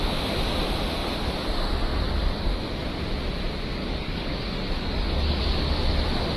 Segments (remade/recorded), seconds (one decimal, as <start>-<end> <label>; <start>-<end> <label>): 0.0-3.8 recorded; 3.8-5.4 remade; 5.4-6.4 recorded